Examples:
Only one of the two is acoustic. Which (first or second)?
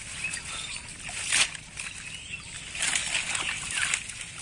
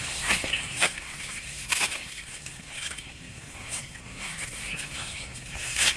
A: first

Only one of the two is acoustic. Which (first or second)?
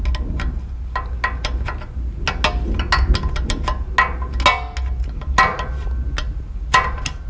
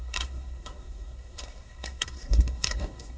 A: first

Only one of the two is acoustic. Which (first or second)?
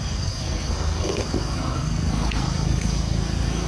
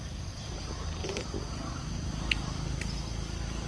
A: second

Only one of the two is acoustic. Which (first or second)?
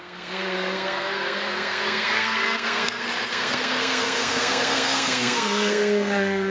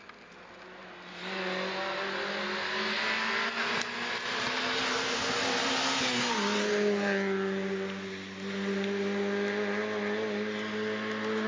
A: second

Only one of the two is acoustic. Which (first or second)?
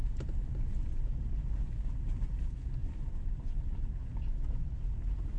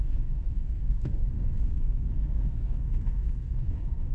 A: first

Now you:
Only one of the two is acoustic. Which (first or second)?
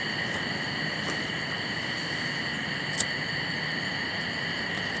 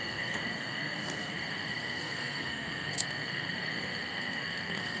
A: first